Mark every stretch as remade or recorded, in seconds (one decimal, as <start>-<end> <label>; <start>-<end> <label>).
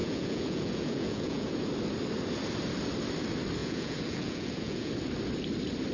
0.0-1.7 remade; 1.7-3.6 recorded; 3.6-4.9 remade; 4.9-5.9 recorded